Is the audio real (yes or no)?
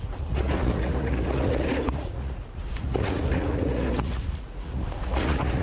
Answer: no